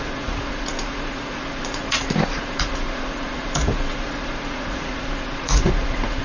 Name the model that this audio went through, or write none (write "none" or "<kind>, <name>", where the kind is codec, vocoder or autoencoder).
vocoder, Vocos